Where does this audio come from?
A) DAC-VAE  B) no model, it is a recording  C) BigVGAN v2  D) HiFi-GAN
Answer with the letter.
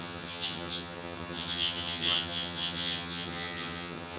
D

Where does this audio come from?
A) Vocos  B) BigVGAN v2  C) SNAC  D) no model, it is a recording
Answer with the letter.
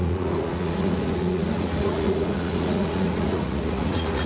A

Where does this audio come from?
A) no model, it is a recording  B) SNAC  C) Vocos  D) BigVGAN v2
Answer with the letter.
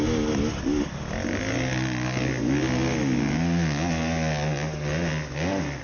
A